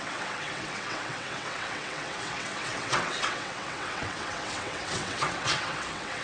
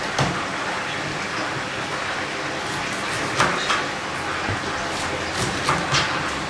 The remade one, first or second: first